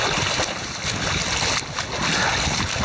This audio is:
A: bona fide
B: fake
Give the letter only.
A